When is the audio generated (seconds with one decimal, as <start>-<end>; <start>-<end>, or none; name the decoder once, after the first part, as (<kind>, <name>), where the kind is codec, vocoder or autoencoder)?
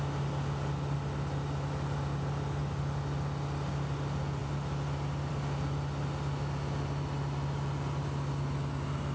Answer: 2.6-3.7 (vocoder, BigVGAN v2); 4.4-5.3